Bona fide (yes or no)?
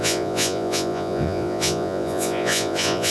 no